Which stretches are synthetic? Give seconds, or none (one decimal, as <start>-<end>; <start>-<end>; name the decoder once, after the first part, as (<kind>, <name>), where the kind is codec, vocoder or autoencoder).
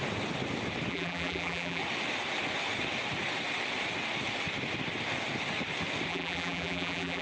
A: 0.9-1.8 (vocoder, BigVGAN v2); 6.1-7.2